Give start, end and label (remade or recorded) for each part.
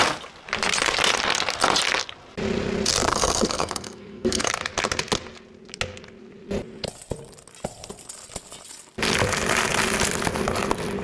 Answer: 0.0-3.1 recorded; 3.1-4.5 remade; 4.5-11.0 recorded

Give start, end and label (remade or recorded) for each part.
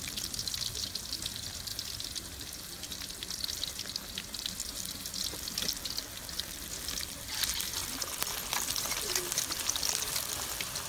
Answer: 0.0-10.9 recorded